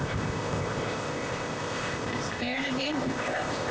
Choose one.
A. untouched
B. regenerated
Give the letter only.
B